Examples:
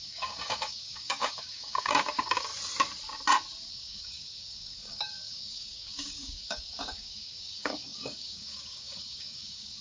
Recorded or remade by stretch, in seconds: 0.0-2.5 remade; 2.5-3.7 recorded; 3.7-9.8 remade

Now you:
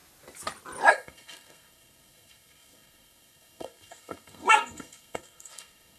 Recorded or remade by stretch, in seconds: 0.0-0.9 recorded; 0.9-6.0 remade

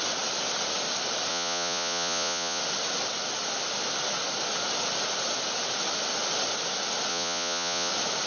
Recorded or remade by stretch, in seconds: 0.0-1.3 recorded; 1.3-2.6 remade; 2.6-7.1 recorded; 7.1-7.9 remade; 7.9-8.3 recorded

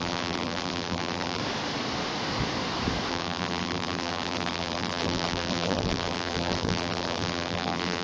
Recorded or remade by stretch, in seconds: 0.0-1.4 remade; 1.4-3.1 recorded; 3.1-8.0 remade

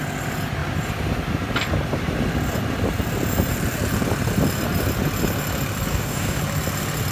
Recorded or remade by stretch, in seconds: 0.0-5.9 recorded; 5.9-6.4 remade; 6.4-7.1 recorded

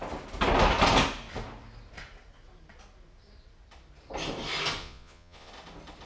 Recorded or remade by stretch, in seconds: 0.0-4.8 recorded; 4.8-5.5 remade; 5.5-6.1 recorded